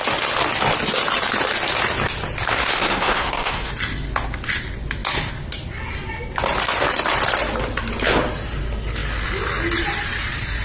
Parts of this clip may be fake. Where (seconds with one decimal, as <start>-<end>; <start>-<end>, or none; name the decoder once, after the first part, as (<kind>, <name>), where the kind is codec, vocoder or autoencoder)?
2.5-3.7 (codec, SNAC)